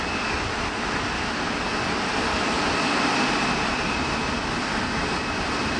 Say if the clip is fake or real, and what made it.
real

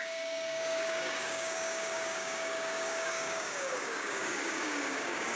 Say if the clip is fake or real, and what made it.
fake, codec, DAC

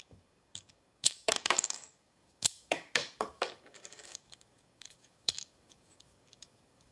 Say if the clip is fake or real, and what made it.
fake, codec, DAC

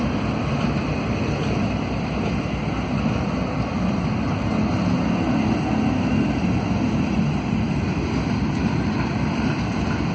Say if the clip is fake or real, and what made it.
real